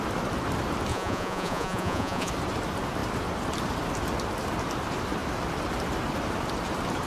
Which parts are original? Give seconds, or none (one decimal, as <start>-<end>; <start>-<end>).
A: 0.0-0.9; 2.3-7.1